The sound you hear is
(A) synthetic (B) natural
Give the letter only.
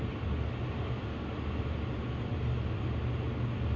B